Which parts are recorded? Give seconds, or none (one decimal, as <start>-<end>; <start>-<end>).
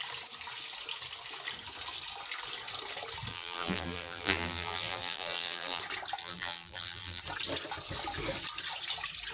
0.0-3.3; 5.8-6.2; 7.2-9.3